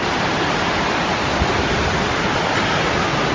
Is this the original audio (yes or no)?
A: yes